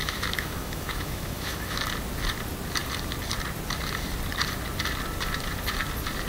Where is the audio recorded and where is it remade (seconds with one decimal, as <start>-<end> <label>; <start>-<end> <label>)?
0.0-1.8 remade; 1.8-6.3 recorded